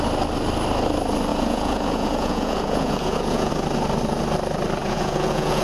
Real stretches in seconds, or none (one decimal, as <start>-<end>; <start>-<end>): 0.0-1.3; 3.5-4.8